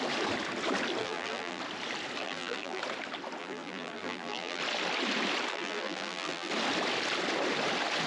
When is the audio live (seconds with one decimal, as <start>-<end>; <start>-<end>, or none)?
0.0-1.0; 1.6-2.2; 2.8-3.4; 4.6-5.5; 6.5-8.1